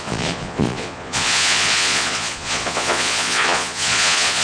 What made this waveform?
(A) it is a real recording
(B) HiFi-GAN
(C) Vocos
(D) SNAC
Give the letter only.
C